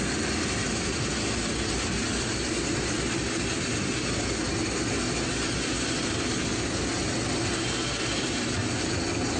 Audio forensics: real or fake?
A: real